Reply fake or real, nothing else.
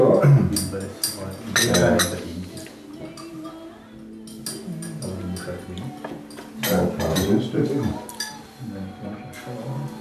real